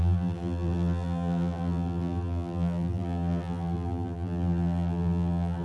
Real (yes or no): no